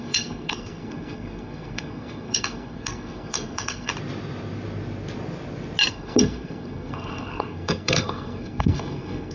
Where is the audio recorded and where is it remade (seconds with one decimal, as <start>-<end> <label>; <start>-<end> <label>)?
0.0-3.9 remade; 3.9-5.9 recorded; 5.9-9.3 remade